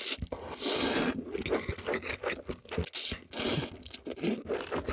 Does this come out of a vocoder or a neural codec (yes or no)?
no